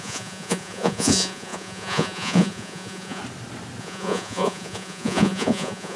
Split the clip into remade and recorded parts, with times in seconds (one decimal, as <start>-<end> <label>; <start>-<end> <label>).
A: 0.0-3.2 remade; 3.2-3.8 recorded; 3.8-6.0 remade